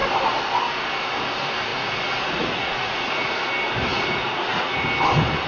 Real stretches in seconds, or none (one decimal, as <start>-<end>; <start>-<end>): 0.0-1.7; 3.5-3.9; 4.8-5.5